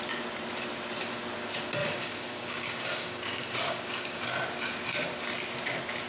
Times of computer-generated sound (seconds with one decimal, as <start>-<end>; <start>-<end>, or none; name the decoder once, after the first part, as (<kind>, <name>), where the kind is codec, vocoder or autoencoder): 1.8-4.2 (codec, DAC)